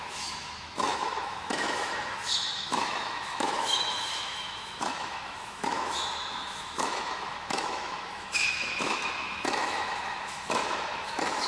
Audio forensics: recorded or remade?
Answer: remade